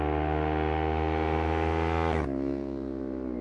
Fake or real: real